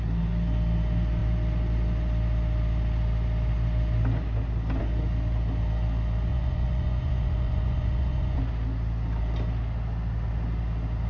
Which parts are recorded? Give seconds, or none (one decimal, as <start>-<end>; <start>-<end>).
0.0-6.3; 8.4-11.1